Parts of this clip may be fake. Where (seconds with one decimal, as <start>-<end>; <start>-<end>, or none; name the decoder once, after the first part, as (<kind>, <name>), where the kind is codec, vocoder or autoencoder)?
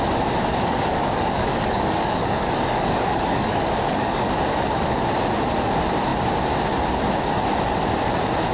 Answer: 0.5-4.4 (codec, DAC)